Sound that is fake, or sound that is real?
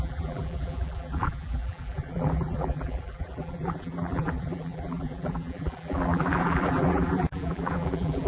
fake